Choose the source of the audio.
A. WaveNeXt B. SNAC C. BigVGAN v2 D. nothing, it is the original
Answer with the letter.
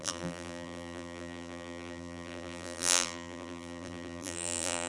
C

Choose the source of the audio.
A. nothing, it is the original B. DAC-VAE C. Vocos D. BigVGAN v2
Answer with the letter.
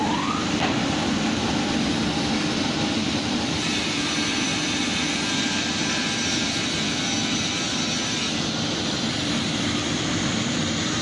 D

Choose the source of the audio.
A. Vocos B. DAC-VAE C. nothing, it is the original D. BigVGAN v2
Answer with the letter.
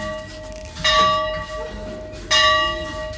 C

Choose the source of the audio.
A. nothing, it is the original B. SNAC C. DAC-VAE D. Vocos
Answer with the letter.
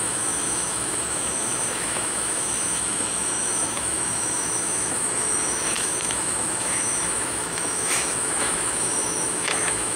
C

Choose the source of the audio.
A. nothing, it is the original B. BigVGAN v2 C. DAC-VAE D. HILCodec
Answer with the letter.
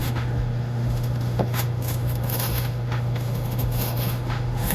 C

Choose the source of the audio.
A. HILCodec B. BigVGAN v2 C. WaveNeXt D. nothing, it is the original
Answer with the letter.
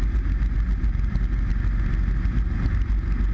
D